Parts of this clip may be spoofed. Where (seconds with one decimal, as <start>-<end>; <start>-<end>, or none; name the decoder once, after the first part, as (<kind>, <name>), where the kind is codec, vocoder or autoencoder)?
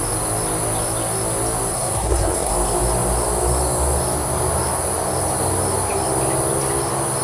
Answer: 1.7-2.5 (codec, SNAC)